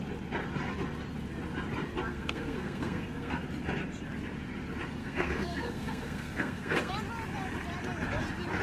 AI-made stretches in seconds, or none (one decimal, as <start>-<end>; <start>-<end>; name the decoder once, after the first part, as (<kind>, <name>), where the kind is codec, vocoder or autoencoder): 2.1-3.4 (codec, SNAC); 5.0-6.9